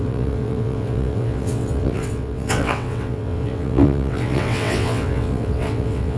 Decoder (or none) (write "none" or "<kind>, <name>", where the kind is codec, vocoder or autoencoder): vocoder, WaveNeXt